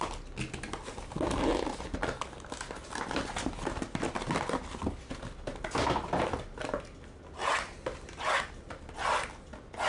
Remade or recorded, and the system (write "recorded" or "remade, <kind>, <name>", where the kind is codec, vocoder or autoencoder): recorded